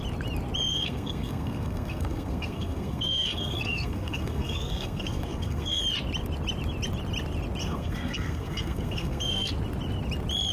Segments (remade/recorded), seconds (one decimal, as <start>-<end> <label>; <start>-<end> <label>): 0.0-0.7 recorded; 0.7-5.8 remade; 5.8-7.6 recorded; 7.6-9.5 remade; 9.5-10.5 recorded